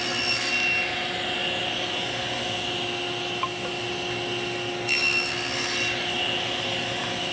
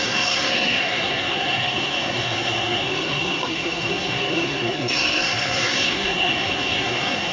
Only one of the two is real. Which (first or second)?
first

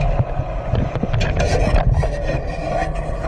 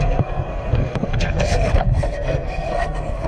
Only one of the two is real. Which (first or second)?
first